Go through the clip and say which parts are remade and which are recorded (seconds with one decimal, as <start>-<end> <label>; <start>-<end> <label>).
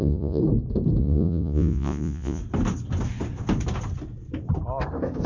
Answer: 0.0-0.4 remade; 0.4-1.0 recorded; 1.0-2.4 remade; 2.4-5.3 recorded